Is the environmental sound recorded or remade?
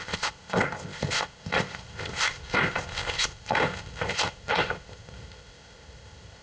remade